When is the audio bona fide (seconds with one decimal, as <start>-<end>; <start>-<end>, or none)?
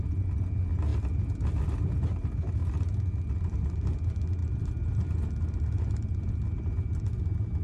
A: 0.0-7.6